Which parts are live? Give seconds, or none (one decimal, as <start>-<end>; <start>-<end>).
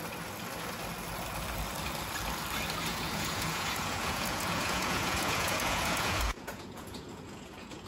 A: 0.0-2.9